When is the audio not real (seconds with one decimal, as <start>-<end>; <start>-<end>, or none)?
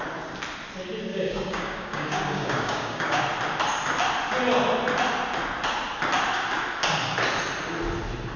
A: 1.1-3.2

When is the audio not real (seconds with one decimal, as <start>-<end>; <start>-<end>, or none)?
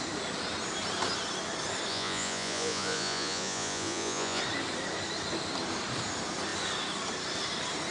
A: 1.9-4.4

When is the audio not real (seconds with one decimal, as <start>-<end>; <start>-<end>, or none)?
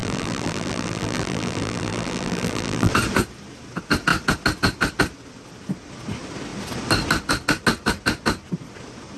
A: 0.0-2.9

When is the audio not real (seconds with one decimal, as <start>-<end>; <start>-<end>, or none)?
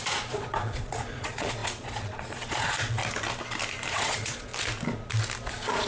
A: 0.0-3.0; 3.9-4.5; 5.5-5.9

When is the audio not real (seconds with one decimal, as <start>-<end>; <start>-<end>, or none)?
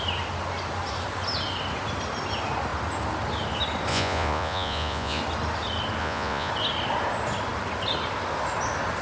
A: 3.9-5.2; 6.0-6.5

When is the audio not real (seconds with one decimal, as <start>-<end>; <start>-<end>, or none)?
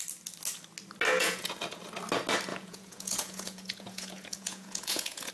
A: 1.1-1.8; 2.5-5.3